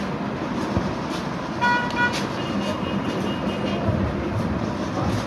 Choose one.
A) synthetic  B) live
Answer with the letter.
B